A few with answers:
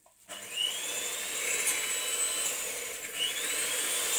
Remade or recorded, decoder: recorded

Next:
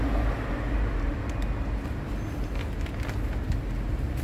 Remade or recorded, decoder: recorded